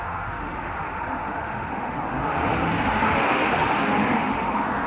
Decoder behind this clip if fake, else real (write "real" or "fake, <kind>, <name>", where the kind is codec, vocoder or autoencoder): fake, autoencoder, DAC-VAE